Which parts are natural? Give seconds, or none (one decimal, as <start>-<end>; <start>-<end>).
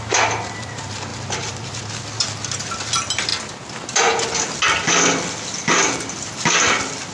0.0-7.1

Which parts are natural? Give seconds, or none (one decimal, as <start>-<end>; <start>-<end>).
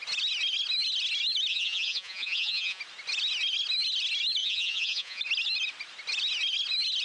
0.0-1.5; 2.8-4.4; 5.2-7.0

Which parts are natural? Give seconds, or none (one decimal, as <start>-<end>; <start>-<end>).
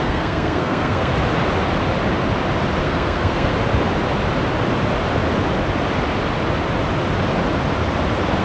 1.1-2.8; 3.5-8.4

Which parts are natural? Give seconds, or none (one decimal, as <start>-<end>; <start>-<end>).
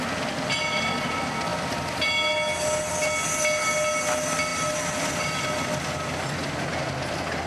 0.0-7.5